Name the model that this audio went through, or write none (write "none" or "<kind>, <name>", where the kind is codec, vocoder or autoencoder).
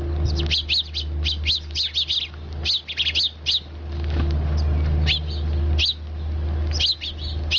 none